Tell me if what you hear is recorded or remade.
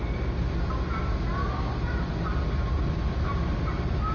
recorded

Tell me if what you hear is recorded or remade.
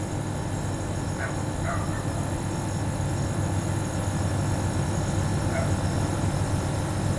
recorded